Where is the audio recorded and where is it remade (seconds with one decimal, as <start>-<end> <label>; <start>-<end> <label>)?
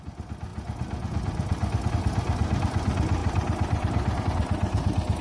0.0-3.2 recorded; 3.2-4.2 remade; 4.2-5.2 recorded